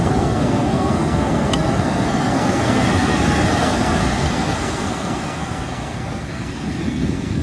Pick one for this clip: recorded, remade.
remade